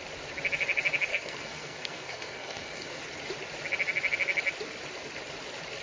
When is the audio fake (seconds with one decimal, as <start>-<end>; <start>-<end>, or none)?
1.1-3.0